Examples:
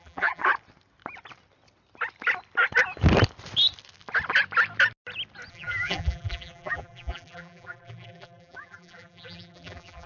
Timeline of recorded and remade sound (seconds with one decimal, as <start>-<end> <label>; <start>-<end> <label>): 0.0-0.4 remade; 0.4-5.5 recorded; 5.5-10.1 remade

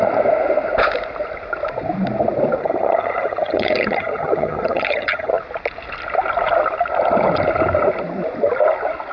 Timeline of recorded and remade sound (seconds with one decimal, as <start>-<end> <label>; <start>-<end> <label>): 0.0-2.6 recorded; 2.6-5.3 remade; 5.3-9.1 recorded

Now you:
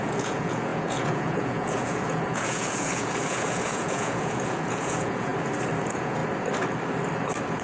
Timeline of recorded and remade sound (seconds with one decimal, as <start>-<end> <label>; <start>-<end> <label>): 0.0-5.3 remade; 5.3-5.8 recorded; 5.8-6.2 remade; 6.2-7.6 recorded